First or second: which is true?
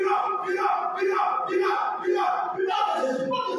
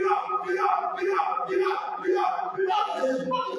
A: first